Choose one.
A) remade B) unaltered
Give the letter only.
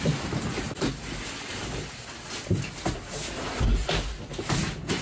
B